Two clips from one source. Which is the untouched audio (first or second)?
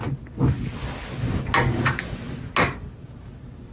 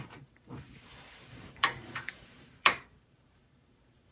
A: first